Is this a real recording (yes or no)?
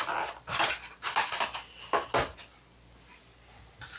yes